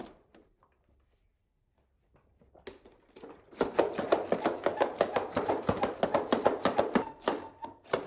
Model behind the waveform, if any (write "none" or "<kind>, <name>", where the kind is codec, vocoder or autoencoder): none